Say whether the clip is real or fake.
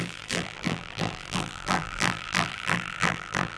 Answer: fake